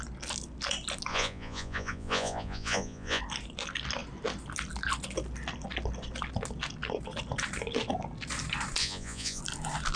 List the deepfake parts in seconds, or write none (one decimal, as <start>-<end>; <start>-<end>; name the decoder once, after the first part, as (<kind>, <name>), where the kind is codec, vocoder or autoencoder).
1.1-3.2 (vocoder, Vocos); 8.8-9.4